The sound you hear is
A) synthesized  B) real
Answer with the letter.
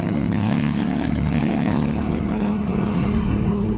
A